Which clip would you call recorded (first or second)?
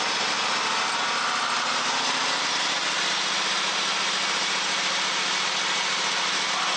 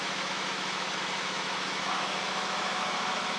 first